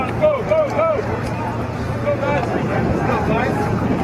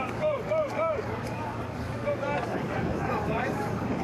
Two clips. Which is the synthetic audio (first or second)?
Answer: second